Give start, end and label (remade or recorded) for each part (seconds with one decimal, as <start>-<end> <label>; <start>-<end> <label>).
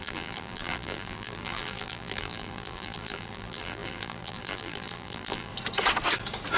0.0-5.5 remade; 5.5-6.6 recorded